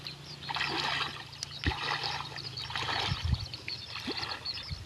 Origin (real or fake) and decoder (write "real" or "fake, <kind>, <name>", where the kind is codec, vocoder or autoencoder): real